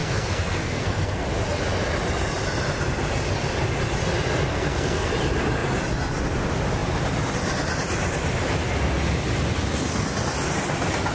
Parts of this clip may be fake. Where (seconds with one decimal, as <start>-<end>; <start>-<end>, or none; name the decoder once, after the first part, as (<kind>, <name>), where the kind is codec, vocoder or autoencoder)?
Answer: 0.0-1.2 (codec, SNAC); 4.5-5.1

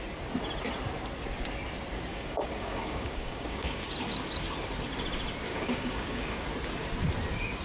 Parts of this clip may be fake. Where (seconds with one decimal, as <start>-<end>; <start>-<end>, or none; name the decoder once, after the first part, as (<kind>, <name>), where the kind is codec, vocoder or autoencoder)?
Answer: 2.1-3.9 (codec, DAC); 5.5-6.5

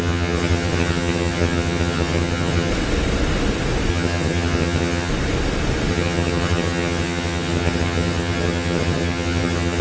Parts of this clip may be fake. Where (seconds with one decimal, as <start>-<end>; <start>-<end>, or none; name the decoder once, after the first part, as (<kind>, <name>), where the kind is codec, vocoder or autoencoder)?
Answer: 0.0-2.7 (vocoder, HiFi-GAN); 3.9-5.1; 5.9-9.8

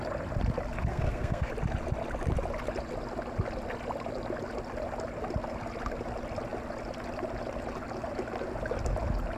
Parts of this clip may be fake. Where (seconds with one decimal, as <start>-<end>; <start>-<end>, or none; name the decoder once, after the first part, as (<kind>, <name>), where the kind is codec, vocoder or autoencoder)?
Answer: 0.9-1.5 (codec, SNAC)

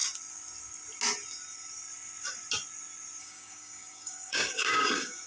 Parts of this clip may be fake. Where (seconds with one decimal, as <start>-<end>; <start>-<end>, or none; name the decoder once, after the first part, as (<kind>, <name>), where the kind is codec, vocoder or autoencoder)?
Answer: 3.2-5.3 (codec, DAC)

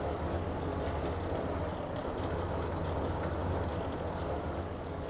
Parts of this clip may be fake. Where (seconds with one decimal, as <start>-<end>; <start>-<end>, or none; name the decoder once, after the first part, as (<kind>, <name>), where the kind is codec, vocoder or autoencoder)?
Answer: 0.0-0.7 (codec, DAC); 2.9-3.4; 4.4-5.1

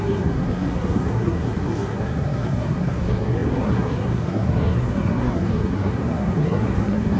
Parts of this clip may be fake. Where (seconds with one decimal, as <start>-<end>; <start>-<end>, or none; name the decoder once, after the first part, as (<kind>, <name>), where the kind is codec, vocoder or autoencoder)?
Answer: 0.0-7.2 (codec, SNAC)